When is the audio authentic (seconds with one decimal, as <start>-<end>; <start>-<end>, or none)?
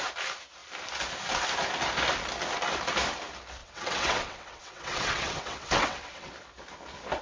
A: 0.0-3.6; 6.3-7.2